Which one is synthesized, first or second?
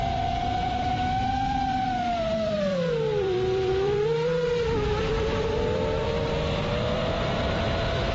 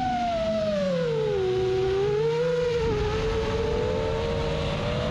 first